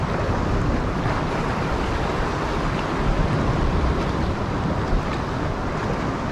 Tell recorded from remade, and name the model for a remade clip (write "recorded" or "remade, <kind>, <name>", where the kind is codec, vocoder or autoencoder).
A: recorded